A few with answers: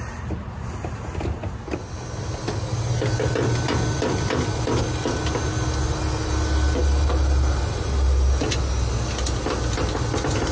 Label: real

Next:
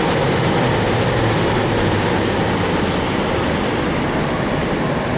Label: real